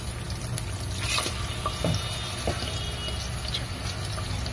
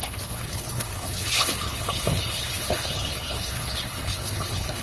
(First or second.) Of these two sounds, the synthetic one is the second